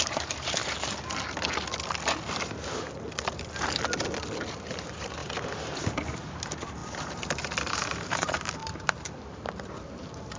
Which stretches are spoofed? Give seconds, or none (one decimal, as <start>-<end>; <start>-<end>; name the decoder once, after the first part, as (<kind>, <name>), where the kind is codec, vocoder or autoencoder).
0.0-0.6 (vocoder, BigVGAN v2); 4.5-10.4